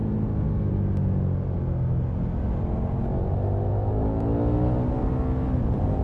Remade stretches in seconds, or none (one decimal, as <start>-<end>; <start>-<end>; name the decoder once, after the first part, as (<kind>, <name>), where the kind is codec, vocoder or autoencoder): none